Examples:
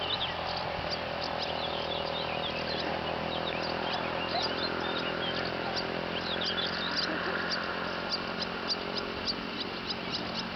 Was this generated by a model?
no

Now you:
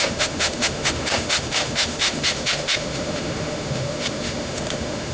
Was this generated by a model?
yes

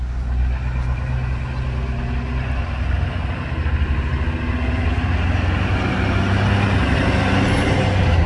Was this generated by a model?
no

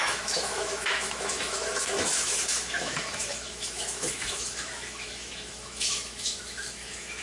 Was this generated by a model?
yes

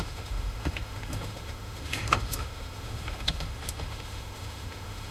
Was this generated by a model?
yes